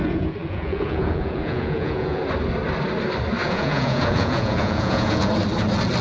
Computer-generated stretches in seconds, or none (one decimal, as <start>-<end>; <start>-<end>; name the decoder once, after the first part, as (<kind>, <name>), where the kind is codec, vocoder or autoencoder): 0.0-2.2 (vocoder, Vocos); 3.4-5.3